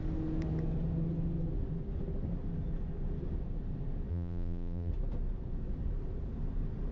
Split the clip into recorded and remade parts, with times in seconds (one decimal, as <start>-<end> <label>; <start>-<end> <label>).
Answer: 0.0-4.1 recorded; 4.1-4.9 remade; 4.9-6.9 recorded